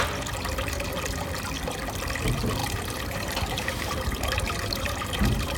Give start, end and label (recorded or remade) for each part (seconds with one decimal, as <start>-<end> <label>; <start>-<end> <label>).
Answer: 0.0-2.6 recorded; 2.6-5.6 remade